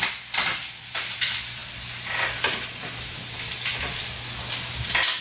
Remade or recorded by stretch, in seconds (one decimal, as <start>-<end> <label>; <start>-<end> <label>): 0.0-5.2 recorded